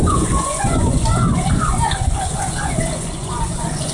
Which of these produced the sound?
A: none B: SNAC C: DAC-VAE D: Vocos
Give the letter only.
D